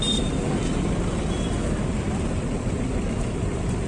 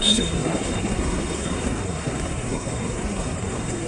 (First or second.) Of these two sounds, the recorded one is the first